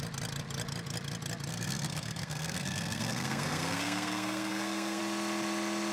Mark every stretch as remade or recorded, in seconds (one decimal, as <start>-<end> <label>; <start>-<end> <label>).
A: 0.0-1.5 recorded; 1.5-5.0 remade; 5.0-5.9 recorded